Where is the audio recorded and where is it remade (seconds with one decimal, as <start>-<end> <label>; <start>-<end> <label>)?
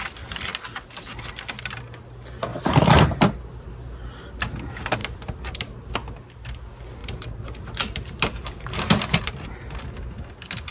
0.0-2.5 recorded; 2.5-3.2 remade; 3.2-5.0 recorded; 5.0-5.9 remade; 5.9-7.0 recorded; 7.0-9.5 remade; 9.5-10.7 recorded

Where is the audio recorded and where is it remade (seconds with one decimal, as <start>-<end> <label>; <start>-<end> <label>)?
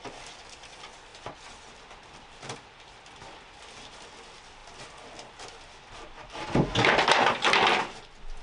0.0-8.4 recorded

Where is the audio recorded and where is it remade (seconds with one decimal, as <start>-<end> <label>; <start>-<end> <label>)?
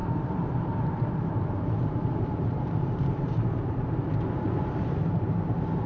0.0-3.5 remade; 3.5-5.9 recorded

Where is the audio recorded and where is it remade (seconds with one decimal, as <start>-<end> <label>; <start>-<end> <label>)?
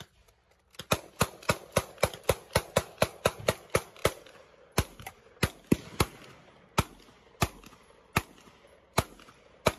0.0-4.0 recorded; 4.0-5.3 remade; 5.3-9.8 recorded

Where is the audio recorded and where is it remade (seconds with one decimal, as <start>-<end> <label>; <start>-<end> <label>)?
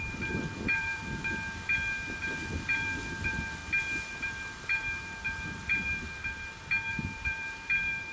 0.0-1.0 remade; 1.0-2.2 recorded; 2.2-3.6 remade; 3.6-4.1 recorded; 4.1-6.2 remade; 6.2-6.9 recorded; 6.9-8.1 remade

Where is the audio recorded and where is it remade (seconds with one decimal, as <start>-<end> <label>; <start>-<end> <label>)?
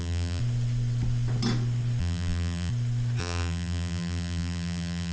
0.0-0.4 remade; 0.4-2.0 recorded; 2.0-2.7 remade; 2.7-3.2 recorded; 3.2-5.1 remade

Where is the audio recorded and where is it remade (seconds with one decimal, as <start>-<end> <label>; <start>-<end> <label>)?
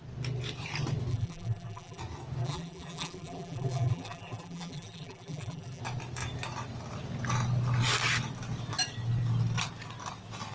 0.0-1.1 recorded; 1.1-2.0 remade; 2.0-2.4 recorded; 2.4-5.8 remade; 5.8-10.5 recorded